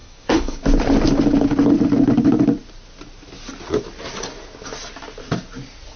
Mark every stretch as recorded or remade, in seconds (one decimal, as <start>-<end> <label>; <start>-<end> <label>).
0.0-0.6 remade; 0.6-6.0 recorded